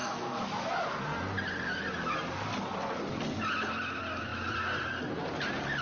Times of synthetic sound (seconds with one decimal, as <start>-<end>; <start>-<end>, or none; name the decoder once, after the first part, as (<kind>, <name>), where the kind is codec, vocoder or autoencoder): 0.0-0.7 (autoencoder, DAC-VAE)